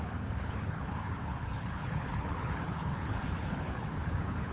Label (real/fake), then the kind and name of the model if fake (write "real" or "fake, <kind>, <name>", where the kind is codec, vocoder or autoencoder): fake, codec, HILCodec